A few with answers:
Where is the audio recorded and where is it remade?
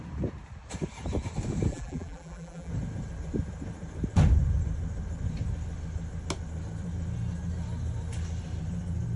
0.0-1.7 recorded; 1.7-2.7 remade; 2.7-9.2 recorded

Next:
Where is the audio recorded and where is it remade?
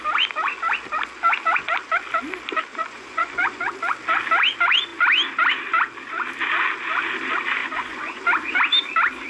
0.0-2.7 recorded; 2.7-3.6 remade; 3.6-7.6 recorded; 7.6-8.2 remade; 8.2-9.3 recorded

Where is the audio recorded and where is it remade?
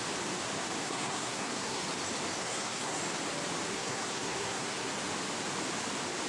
0.0-0.8 recorded; 0.8-1.8 remade; 1.8-2.4 recorded; 2.4-3.0 remade; 3.0-3.7 recorded; 3.7-4.9 remade; 4.9-6.3 recorded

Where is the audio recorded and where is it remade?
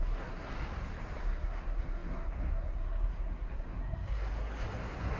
0.0-0.5 remade; 0.5-1.2 recorded; 1.2-5.2 remade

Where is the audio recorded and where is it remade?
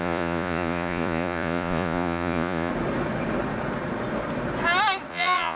0.0-2.7 remade; 2.7-5.1 recorded; 5.1-5.6 remade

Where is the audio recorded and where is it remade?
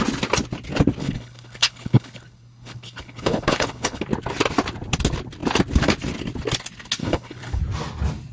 0.0-1.0 recorded; 1.0-4.0 remade; 4.0-7.0 recorded; 7.0-7.6 remade; 7.6-8.3 recorded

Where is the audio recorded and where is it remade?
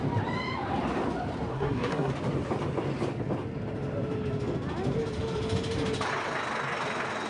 0.0-1.5 recorded; 1.5-2.1 remade; 2.1-7.3 recorded